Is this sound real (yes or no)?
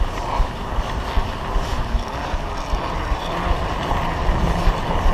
yes